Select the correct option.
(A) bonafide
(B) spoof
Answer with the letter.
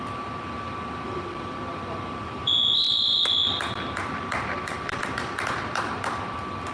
B